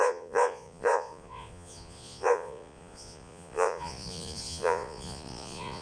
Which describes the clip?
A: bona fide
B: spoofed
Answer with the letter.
B